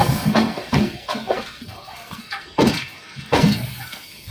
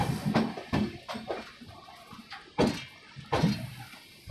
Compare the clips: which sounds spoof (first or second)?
first